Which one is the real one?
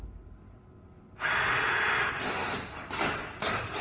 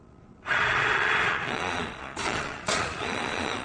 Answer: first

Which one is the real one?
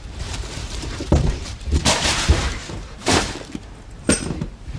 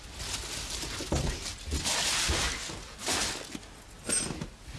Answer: second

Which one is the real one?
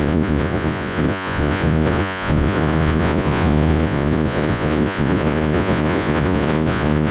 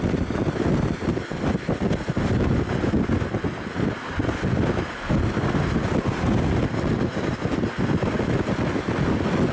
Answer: second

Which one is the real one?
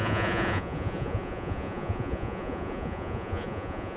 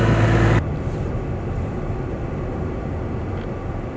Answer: second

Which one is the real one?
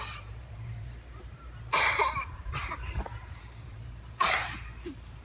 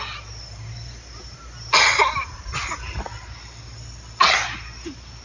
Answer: second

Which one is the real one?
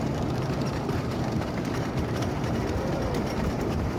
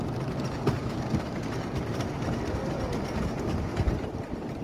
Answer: second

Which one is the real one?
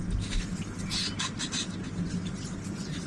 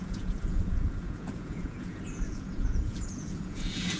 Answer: first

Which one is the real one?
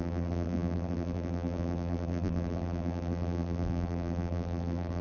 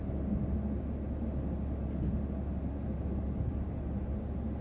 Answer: second